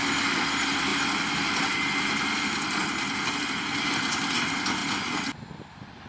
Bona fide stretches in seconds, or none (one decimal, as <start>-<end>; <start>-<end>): 0.0-6.1